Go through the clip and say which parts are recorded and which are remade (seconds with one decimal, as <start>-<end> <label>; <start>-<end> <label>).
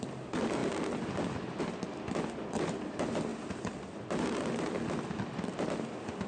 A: 0.0-6.3 recorded